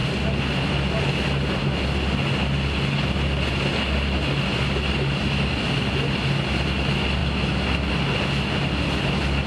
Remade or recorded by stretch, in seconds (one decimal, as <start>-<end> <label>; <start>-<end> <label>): 0.0-9.5 recorded